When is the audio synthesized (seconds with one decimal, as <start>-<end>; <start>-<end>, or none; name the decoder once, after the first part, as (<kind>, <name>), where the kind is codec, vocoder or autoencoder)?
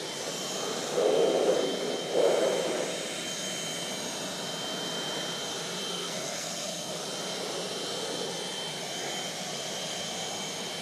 5.9-7.0 (codec, SNAC)